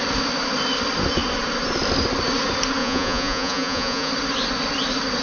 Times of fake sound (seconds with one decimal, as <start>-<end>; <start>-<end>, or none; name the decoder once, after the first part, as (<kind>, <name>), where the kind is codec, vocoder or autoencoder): 2.8-4.1 (vocoder, Vocos)

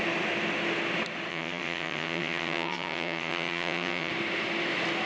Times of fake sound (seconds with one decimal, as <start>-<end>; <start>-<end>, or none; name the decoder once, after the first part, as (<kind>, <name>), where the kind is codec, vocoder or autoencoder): 1.3-4.1 (vocoder, HiFi-GAN)

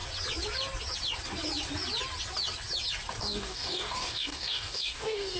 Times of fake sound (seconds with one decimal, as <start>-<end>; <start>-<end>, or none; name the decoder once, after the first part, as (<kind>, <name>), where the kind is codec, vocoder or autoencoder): 3.2-5.4 (codec, DAC)

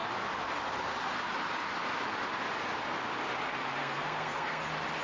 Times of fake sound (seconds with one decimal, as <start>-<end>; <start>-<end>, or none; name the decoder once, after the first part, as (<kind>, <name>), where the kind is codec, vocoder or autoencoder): 3.8-4.6 (codec, SNAC)

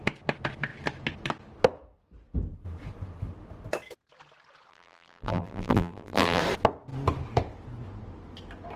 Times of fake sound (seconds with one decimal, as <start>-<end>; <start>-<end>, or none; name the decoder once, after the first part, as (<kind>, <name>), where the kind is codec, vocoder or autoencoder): 4.7-6.4 (vocoder, BigVGAN v2)